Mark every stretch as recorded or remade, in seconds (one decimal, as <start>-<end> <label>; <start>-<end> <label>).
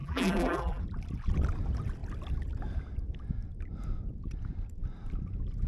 0.0-0.8 remade; 0.8-5.7 recorded